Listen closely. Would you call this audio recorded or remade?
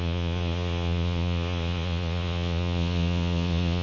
remade